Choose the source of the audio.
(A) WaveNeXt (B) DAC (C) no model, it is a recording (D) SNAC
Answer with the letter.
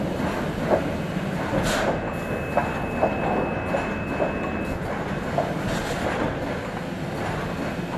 C